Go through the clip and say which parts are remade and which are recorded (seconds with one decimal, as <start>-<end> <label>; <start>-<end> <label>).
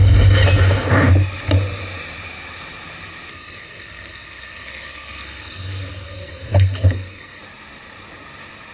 0.0-3.3 recorded; 3.3-7.4 remade; 7.4-8.7 recorded